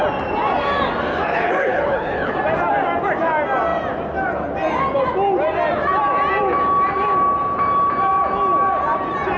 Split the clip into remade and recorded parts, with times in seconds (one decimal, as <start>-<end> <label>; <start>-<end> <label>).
0.0-1.3 recorded; 1.3-2.3 remade; 2.3-9.4 recorded